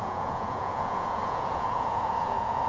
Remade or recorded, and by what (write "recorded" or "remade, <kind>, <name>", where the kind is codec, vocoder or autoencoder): remade, vocoder, Vocos